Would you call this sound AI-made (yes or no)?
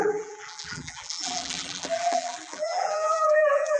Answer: yes